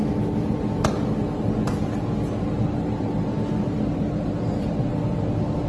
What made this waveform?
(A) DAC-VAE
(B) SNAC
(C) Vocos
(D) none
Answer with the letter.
D